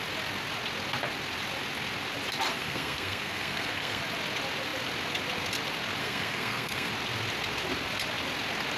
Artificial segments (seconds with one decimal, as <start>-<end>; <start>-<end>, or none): 2.5-4.0; 6.0-6.9